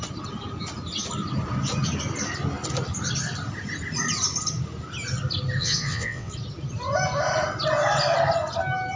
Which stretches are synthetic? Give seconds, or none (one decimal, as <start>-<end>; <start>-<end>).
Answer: 5.6-6.3